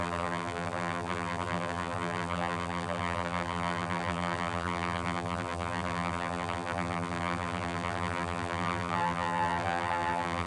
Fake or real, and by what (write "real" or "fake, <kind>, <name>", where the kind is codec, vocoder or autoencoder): fake, vocoder, BigVGAN v2